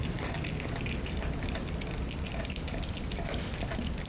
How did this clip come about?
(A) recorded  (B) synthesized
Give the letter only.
A